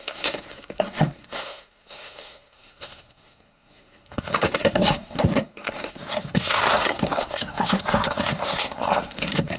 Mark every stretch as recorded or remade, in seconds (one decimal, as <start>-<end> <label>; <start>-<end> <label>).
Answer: 0.0-9.6 remade